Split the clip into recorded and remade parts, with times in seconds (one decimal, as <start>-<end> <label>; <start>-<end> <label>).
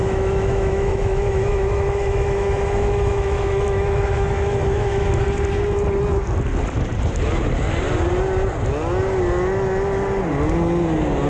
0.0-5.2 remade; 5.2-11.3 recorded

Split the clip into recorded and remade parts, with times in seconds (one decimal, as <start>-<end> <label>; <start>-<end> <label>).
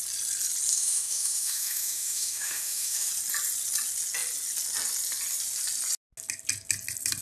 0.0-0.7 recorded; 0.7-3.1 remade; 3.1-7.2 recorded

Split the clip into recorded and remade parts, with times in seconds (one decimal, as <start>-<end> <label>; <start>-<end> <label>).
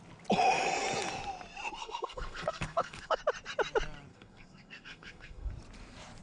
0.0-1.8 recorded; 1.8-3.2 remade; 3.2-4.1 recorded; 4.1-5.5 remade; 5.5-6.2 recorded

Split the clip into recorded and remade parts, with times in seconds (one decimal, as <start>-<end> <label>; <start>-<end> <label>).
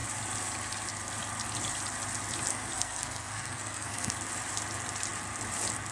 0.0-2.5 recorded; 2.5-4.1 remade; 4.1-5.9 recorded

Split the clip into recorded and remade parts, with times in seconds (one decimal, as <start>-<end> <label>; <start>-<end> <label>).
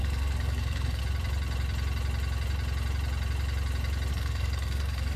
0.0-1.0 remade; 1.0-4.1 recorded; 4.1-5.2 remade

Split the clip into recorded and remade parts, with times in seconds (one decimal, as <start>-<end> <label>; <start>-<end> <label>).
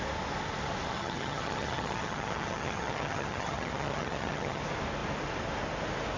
0.0-0.9 recorded; 0.9-4.6 remade; 4.6-6.2 recorded